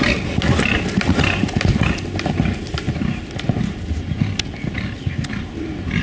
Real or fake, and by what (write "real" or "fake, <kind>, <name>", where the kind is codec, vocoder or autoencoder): real